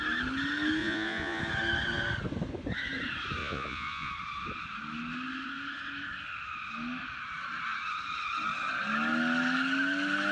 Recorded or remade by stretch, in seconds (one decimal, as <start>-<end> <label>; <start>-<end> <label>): 0.0-0.8 recorded; 0.8-1.4 remade; 1.4-3.4 recorded; 3.4-4.1 remade; 4.1-10.3 recorded